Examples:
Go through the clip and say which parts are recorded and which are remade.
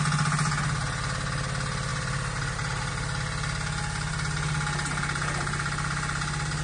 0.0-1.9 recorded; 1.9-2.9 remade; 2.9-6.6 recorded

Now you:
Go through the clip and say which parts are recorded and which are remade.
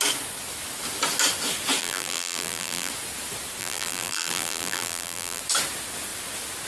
0.0-1.8 recorded; 1.8-2.9 remade; 2.9-3.6 recorded; 3.6-5.4 remade; 5.4-6.7 recorded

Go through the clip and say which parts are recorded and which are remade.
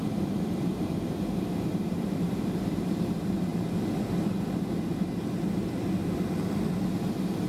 0.0-3.5 remade; 3.5-5.3 recorded; 5.3-6.0 remade; 6.0-7.1 recorded; 7.1-7.5 remade